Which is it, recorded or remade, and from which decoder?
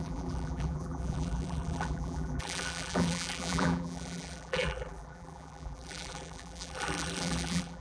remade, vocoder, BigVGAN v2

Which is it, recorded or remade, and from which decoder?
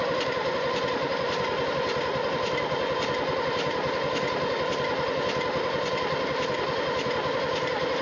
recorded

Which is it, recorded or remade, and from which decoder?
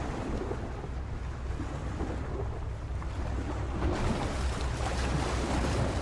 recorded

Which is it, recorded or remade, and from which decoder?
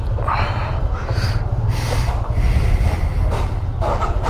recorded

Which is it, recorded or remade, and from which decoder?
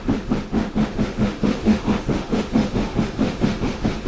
remade, autoencoder, DAC-VAE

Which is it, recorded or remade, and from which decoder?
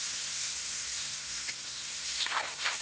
remade, codec, SNAC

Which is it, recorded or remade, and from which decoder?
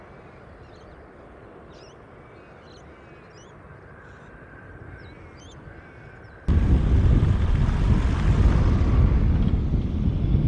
recorded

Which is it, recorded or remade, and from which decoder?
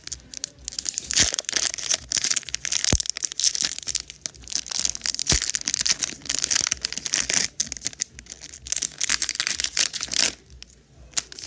recorded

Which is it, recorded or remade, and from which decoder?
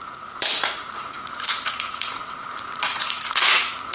remade, vocoder, Vocos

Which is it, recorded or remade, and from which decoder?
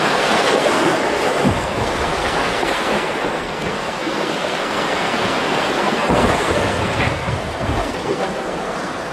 remade, codec, SNAC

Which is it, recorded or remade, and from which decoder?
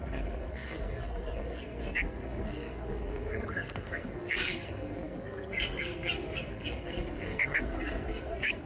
remade, codec, SNAC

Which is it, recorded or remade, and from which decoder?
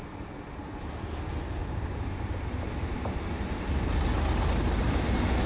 recorded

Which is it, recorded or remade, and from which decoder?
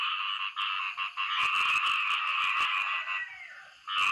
recorded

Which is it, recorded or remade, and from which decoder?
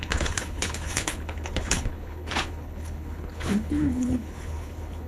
remade, codec, HILCodec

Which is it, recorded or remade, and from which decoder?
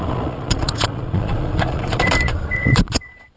remade, vocoder, Vocos